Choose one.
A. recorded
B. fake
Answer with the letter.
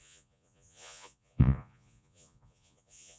B